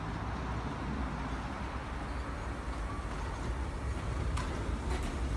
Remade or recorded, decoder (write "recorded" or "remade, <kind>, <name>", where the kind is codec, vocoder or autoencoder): recorded